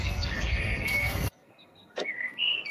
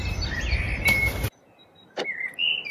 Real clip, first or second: second